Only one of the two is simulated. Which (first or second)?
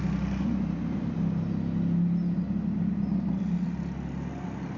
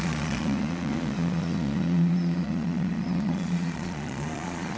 second